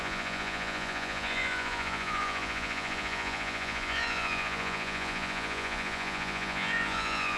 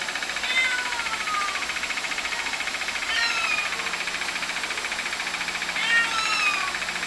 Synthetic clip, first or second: first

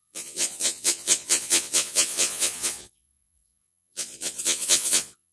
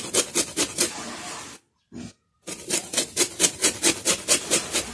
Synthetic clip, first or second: first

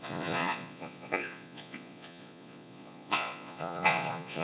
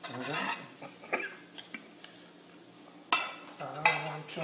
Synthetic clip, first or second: first